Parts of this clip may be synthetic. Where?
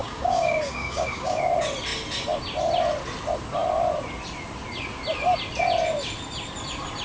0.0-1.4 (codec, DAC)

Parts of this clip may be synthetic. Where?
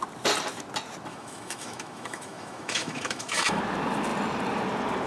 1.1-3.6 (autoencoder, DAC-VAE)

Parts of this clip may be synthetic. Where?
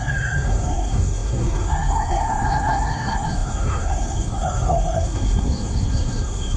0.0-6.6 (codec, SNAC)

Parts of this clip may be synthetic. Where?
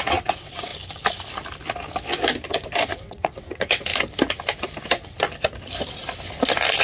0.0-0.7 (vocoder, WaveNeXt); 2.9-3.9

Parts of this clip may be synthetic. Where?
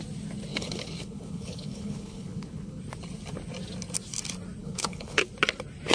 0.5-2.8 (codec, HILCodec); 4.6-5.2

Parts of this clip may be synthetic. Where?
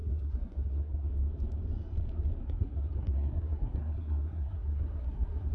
0.0-1.1 (codec, SNAC); 2.4-5.5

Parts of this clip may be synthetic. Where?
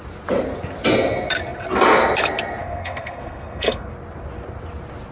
2.6-3.9 (codec, SNAC)